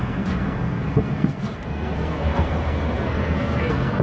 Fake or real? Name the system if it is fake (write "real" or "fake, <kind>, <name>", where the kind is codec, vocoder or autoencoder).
fake, codec, SNAC